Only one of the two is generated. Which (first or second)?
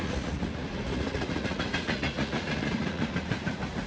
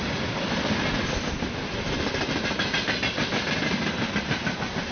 first